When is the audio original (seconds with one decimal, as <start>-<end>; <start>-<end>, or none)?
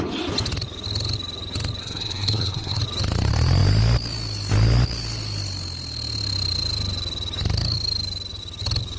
0.0-1.8; 2.8-9.0